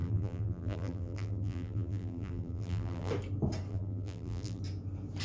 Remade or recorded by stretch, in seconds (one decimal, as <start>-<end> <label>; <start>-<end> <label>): 0.0-3.1 remade; 3.1-3.7 recorded; 3.7-4.6 remade; 4.6-5.2 recorded